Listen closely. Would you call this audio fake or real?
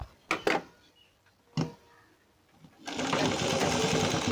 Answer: real